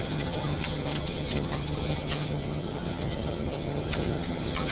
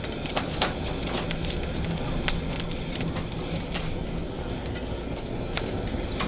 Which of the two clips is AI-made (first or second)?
first